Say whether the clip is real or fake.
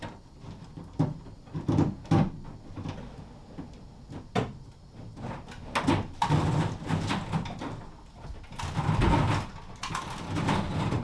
real